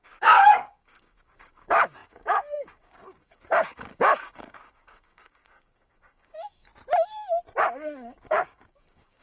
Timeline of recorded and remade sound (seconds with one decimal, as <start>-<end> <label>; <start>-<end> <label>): 0.0-6.7 remade; 6.7-7.6 recorded; 7.6-9.2 remade